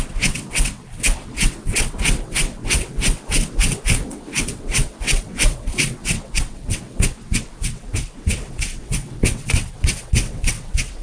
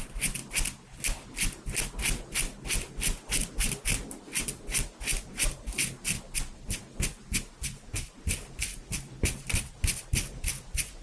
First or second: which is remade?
first